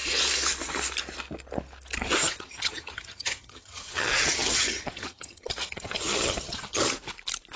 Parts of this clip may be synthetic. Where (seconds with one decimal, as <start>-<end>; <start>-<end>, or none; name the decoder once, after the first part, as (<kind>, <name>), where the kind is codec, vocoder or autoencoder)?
2.2-6.8 (vocoder, HiFi-GAN)